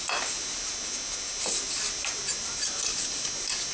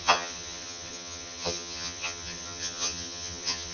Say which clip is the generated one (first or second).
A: second